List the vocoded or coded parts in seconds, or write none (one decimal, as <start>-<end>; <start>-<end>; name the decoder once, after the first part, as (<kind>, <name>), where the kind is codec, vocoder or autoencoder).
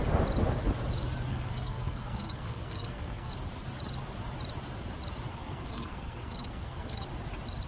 1.3-3.3 (codec, SNAC); 5.3-7.1